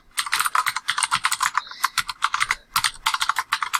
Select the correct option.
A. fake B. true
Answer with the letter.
B